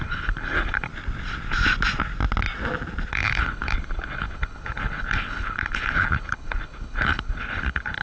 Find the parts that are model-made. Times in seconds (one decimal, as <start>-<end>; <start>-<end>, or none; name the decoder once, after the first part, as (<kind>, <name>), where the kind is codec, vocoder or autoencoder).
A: 0.0-0.9 (codec, HILCodec); 3.1-8.0